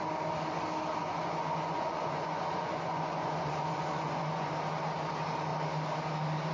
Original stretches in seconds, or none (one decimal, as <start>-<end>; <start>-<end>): 0.0-1.0; 4.5-6.5